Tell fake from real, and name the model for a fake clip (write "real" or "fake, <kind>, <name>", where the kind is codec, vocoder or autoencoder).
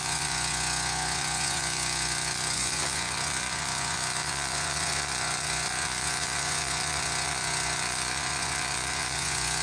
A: fake, vocoder, Vocos